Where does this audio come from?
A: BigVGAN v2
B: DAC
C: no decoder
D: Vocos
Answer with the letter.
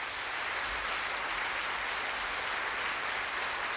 C